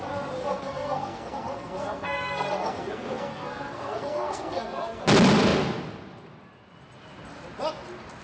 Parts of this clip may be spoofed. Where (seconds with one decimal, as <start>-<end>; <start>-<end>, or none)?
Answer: 0.4-5.0